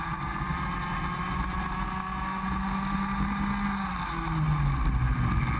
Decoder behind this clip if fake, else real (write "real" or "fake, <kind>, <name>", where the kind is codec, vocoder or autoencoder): real